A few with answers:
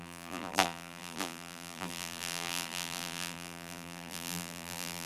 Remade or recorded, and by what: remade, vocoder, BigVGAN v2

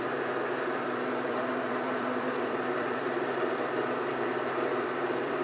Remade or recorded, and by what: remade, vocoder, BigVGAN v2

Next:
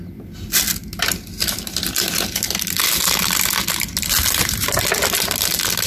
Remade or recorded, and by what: recorded